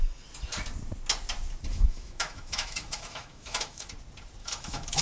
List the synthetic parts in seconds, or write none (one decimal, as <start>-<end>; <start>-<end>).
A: 1.7-3.9; 4.4-5.0